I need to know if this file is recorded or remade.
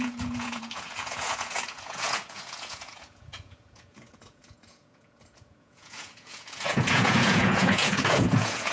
remade